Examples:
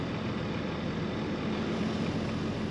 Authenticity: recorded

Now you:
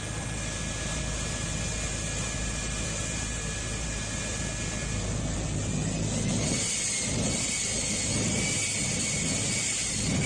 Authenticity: recorded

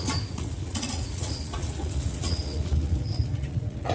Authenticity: remade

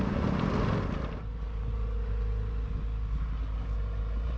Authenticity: recorded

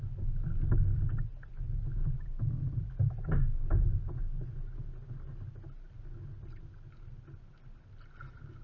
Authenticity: recorded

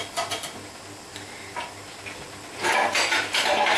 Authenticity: recorded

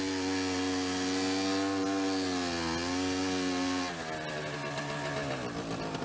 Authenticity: recorded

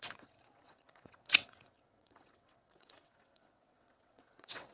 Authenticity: remade